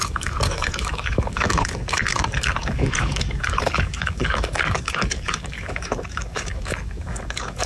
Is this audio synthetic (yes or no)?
yes